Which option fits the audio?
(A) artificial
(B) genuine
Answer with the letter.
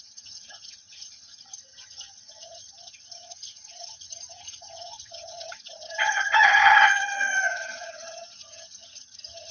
A